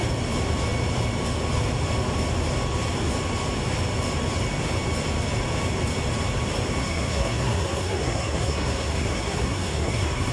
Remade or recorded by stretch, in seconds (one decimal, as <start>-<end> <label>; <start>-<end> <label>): 0.0-6.8 recorded; 6.8-10.3 remade